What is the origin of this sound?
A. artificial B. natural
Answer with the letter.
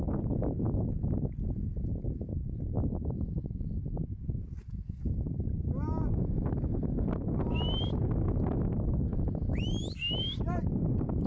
B